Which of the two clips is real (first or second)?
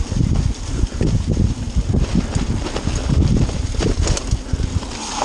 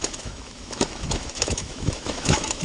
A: first